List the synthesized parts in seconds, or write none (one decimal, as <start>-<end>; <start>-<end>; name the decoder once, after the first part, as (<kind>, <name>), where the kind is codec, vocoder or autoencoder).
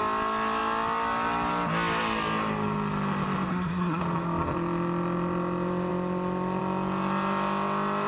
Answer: 3.5-4.0 (codec, SNAC)